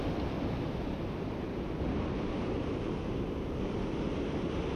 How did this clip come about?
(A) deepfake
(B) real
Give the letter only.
B